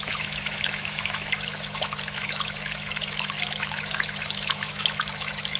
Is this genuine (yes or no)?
no